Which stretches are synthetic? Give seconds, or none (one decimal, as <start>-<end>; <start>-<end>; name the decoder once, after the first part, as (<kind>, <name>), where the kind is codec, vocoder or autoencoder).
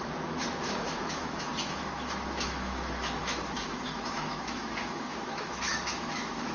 0.0-6.5 (autoencoder, DAC-VAE)